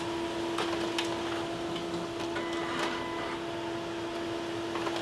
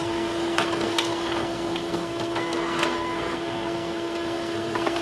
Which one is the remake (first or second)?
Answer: second